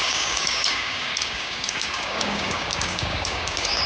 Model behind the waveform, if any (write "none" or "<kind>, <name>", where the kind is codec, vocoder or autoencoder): codec, DAC